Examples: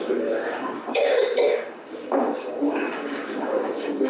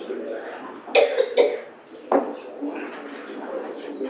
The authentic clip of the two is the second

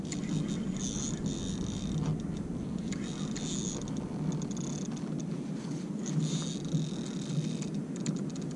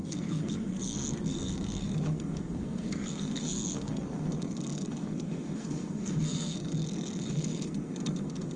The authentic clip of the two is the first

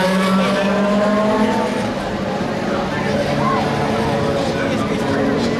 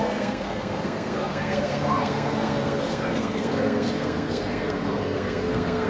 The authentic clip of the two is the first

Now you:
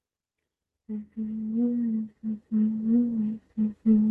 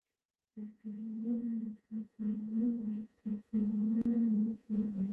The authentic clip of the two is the first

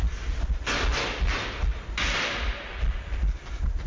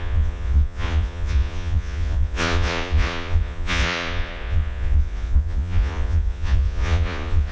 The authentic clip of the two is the first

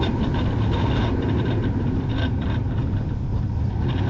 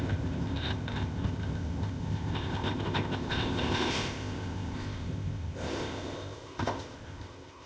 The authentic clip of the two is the first